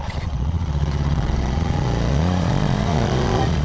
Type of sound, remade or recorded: remade